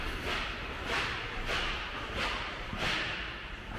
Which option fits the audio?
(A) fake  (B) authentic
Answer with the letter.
B